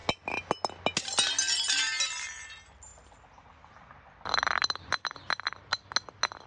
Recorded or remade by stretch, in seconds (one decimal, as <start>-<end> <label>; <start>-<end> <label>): 0.0-6.5 recorded